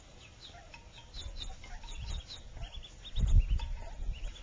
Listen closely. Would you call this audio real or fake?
real